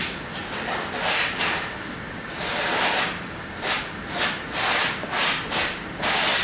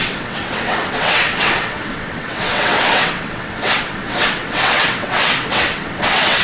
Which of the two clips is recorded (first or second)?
first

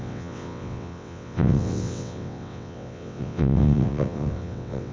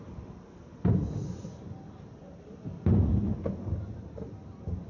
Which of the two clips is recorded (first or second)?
second